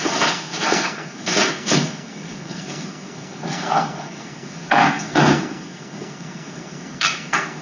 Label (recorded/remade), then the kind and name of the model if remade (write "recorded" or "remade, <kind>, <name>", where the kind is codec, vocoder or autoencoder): remade, codec, SNAC